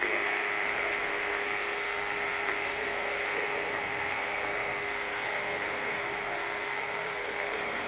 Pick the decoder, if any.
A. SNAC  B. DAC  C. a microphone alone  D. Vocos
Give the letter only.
A